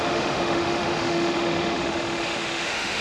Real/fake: fake